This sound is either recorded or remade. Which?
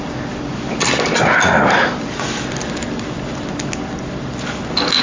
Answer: recorded